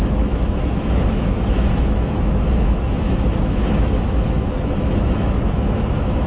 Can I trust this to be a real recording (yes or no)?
no